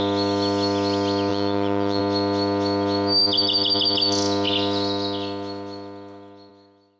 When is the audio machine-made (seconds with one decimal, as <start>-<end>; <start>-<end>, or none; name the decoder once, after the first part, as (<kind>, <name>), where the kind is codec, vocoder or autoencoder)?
1.3-2.0 (vocoder, Vocos)